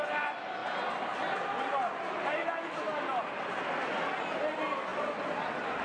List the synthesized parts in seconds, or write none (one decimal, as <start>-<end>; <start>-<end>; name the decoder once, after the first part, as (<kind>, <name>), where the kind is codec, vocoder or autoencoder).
none